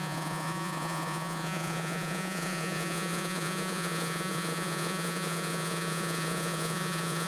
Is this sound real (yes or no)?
no